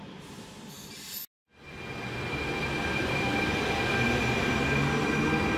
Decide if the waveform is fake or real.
real